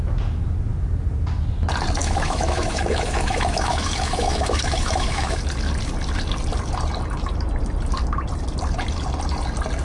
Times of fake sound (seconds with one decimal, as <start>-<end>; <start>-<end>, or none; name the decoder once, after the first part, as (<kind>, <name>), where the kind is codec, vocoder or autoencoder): 2.0-5.4 (autoencoder, DAC-VAE)